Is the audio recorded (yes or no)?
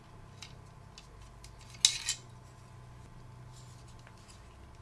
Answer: yes